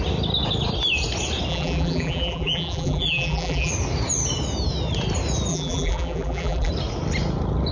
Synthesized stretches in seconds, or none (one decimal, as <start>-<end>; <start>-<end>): 1.5-3.7; 5.5-6.7